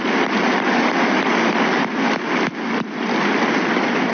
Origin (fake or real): real